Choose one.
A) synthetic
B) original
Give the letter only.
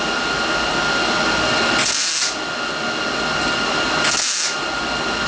B